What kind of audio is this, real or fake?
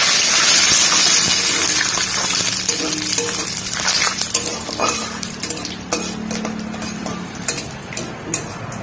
real